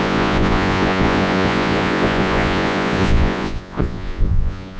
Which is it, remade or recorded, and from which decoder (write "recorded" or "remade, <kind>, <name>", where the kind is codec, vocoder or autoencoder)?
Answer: remade, vocoder, Vocos